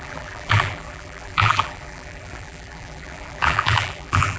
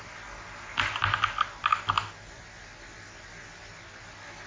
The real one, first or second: second